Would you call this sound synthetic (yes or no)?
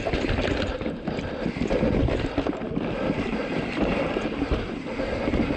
yes